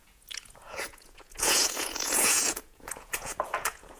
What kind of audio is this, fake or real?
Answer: fake